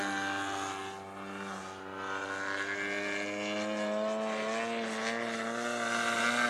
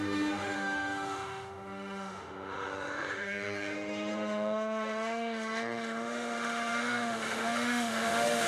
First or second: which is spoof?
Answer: second